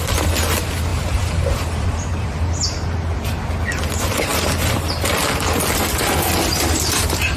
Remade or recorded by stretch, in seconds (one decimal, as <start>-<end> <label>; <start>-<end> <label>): 0.0-0.9 recorded; 0.9-2.2 remade; 2.2-6.5 recorded; 6.5-7.4 remade